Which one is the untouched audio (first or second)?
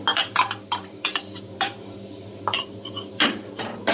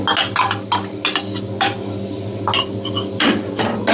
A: second